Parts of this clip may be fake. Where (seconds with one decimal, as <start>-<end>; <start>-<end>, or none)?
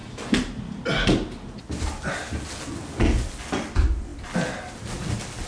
none